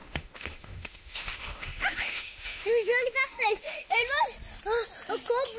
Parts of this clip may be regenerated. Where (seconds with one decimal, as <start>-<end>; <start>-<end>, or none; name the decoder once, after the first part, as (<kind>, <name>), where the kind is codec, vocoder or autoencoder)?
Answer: 0.0-4.0 (autoencoder, DAC-VAE)